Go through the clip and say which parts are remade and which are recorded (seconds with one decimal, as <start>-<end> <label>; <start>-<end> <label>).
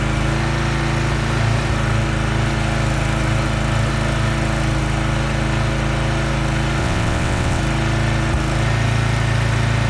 0.0-6.8 recorded; 6.8-7.6 remade; 7.6-9.9 recorded